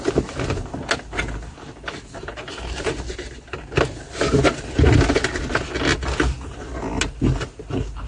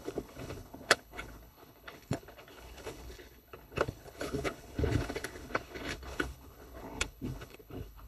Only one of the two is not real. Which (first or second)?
second